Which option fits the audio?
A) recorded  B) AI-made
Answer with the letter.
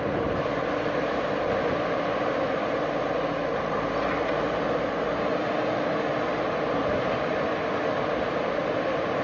A